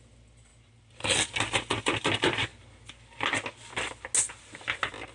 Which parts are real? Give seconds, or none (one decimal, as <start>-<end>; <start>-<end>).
0.0-5.1